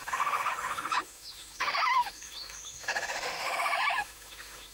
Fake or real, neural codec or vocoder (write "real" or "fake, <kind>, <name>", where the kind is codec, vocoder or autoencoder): fake, autoencoder, DAC-VAE